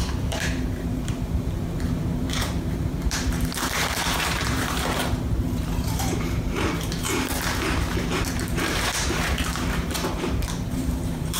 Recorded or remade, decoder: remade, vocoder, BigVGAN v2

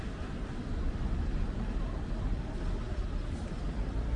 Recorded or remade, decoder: recorded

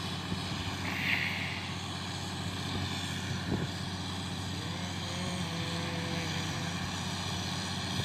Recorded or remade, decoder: recorded